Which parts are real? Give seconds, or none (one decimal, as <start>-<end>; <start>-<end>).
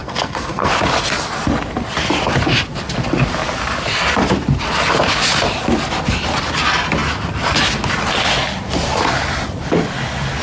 0.7-10.4